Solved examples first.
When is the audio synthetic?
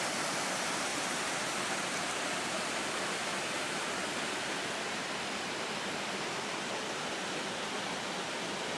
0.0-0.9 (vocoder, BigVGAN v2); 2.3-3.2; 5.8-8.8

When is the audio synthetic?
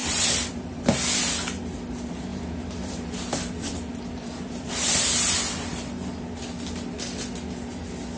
0.0-1.2 (vocoder, BigVGAN v2); 2.3-5.0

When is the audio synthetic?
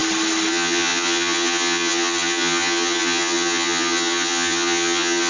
0.5-5.3 (vocoder, HiFi-GAN)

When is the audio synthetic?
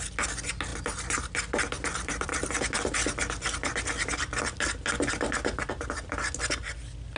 0.7-2.5 (vocoder, BigVGAN v2)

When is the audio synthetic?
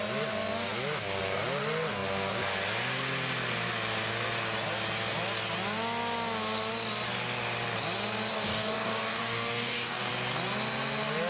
8.3-10.1 (codec, DAC)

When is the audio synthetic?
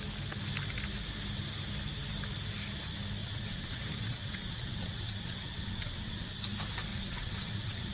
3.2-6.4 (vocoder, WaveNeXt); 6.9-7.9